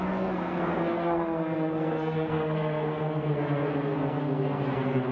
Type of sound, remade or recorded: remade